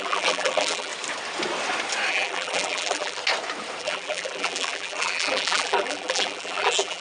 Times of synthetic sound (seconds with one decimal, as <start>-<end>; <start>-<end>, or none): 0.0-0.9; 2.1-3.2; 3.8-7.0